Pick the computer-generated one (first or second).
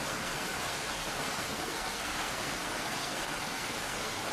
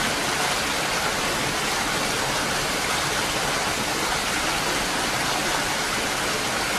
first